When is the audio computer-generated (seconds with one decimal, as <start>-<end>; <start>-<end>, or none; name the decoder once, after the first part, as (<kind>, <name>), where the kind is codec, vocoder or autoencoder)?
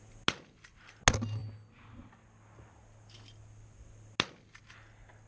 none